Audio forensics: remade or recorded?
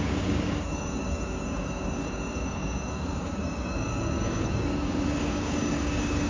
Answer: remade